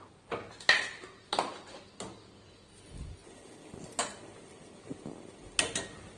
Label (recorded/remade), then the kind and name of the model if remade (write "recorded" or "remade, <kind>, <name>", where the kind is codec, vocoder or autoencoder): recorded